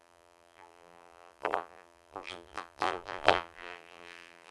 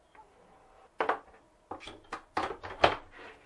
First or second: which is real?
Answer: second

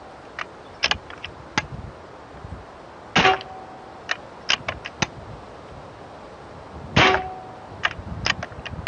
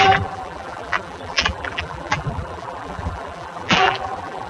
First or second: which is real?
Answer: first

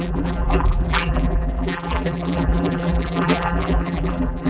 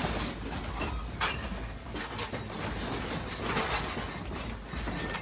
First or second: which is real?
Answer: second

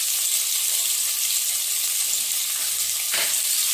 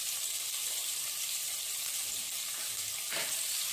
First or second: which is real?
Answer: first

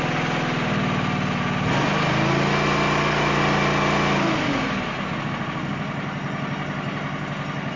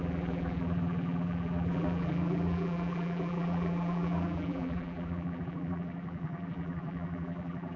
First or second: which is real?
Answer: first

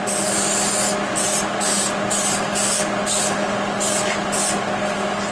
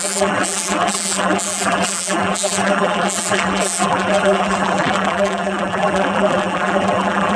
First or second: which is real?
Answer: first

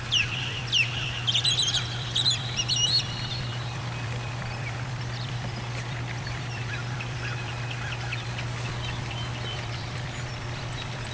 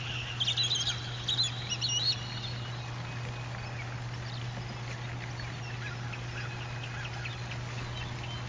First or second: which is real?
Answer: second